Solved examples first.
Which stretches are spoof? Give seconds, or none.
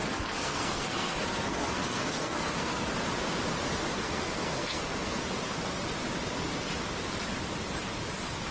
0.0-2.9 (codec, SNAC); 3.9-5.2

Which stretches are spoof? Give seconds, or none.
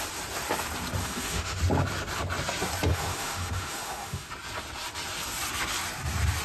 1.0-1.6 (autoencoder, DAC-VAE); 2.9-4.3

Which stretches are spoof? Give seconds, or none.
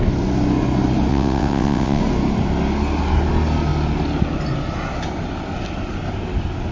1.1-2.0 (vocoder, WaveNeXt)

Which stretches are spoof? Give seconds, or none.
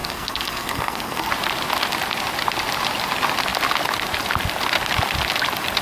0.0-1.3 (codec, SNAC)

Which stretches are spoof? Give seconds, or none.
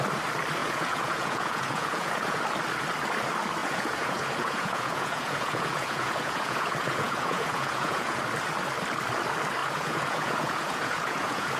0.6-2.4 (vocoder, Vocos); 3.6-8.2; 9.6-11.6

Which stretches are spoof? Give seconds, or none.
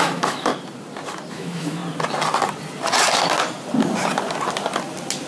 0.0-0.5 (autoencoder, DAC-VAE); 1.3-1.8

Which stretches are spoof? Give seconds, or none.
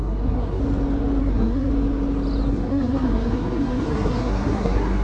0.0-0.6 (codec, SNAC); 1.2-1.7; 2.5-5.0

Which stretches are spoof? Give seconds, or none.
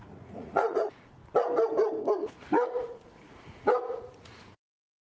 0.0-1.2 (vocoder, Vocos); 2.1-5.0